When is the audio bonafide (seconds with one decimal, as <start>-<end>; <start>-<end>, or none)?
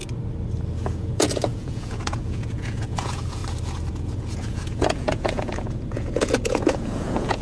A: 0.0-0.9; 3.4-3.9